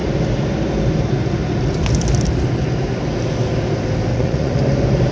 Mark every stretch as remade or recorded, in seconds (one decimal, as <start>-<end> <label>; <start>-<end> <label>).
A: 0.0-4.1 recorded; 4.1-4.6 remade; 4.6-5.1 recorded